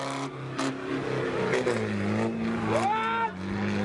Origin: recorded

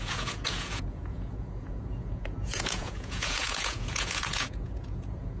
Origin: remade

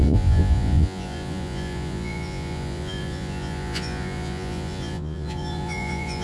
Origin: remade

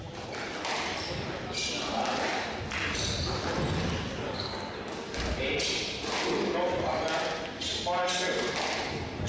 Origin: recorded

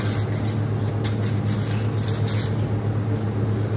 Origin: recorded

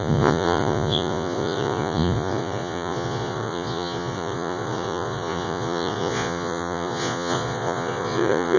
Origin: remade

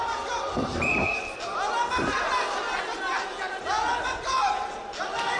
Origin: recorded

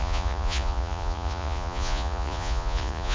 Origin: remade